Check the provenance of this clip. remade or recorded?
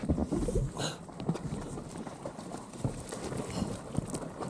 recorded